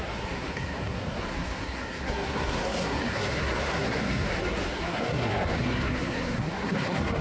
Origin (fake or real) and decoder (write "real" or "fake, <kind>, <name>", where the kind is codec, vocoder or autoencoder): fake, codec, SNAC